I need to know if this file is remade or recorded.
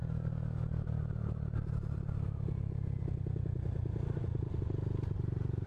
recorded